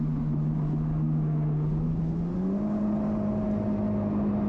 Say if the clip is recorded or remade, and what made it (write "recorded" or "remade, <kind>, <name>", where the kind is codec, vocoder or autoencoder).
recorded